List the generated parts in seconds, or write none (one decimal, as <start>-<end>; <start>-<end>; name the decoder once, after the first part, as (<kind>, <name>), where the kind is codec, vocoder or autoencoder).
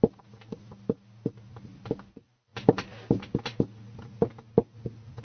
none